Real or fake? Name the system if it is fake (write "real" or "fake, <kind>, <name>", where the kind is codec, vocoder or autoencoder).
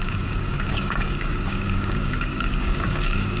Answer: fake, codec, DAC